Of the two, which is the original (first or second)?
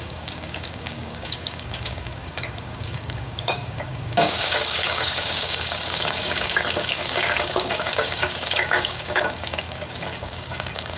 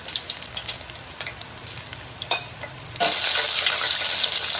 second